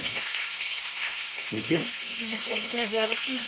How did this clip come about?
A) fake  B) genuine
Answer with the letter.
A